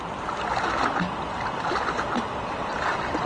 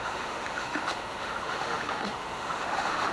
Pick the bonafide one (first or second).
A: first